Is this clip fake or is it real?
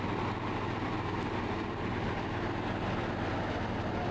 real